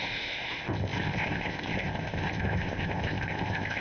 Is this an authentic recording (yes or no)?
no